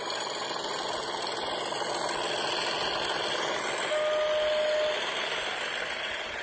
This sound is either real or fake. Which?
real